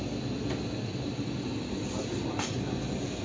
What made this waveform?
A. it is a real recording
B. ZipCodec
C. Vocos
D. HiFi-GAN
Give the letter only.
A